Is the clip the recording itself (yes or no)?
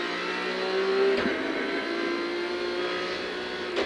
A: yes